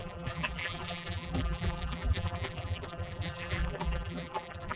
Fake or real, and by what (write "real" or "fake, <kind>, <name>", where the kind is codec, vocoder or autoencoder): fake, vocoder, BigVGAN v2